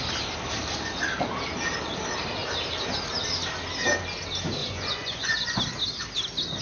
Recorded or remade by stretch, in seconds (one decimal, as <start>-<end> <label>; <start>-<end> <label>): 0.0-4.6 recorded; 4.6-5.6 remade; 5.6-6.6 recorded